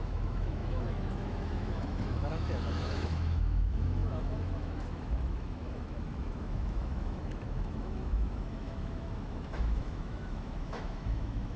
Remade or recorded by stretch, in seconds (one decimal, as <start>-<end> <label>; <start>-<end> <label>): 0.0-11.6 remade